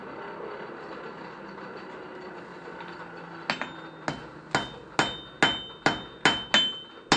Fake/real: real